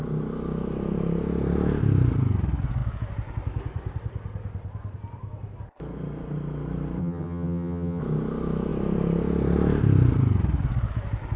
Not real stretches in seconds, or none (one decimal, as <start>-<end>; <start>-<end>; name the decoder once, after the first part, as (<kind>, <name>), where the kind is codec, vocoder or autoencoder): 7.0-8.0 (vocoder, HiFi-GAN)